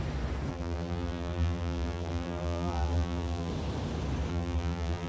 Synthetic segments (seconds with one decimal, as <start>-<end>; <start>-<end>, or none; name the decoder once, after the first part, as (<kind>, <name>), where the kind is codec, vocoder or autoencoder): 0.5-3.5 (vocoder, BigVGAN v2); 4.3-5.1